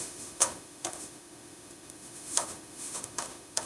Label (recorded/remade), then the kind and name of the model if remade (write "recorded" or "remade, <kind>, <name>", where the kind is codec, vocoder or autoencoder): remade, autoencoder, DAC-VAE